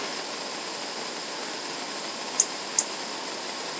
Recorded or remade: recorded